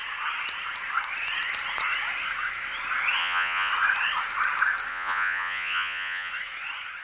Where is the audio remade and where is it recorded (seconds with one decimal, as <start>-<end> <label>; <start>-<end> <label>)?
0.0-3.2 recorded; 3.2-3.7 remade; 3.7-4.9 recorded; 4.9-6.3 remade; 6.3-7.0 recorded